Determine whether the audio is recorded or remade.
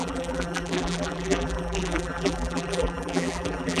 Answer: remade